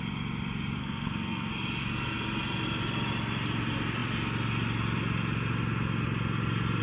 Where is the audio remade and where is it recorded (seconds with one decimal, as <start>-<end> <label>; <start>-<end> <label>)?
0.0-0.8 recorded; 0.8-1.5 remade; 1.5-6.8 recorded